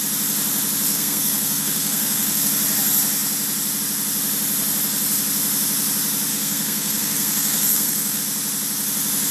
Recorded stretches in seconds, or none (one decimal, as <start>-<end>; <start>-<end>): 0.0-0.9; 2.5-6.3; 8.2-9.3